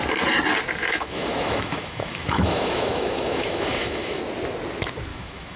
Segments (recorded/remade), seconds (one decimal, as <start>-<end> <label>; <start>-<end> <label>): 0.0-0.8 recorded; 0.8-4.2 remade; 4.2-5.1 recorded; 5.1-5.6 remade